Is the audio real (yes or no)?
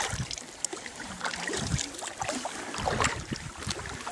yes